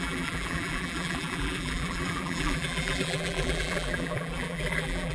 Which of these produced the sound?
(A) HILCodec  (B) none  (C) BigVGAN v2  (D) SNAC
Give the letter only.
C